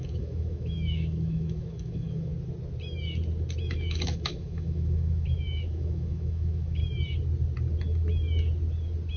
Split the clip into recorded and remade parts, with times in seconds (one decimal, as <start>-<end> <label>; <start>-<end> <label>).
0.0-2.3 remade; 2.3-3.6 recorded; 3.6-6.8 remade; 6.8-9.2 recorded